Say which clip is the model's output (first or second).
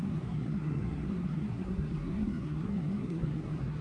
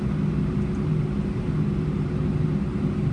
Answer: first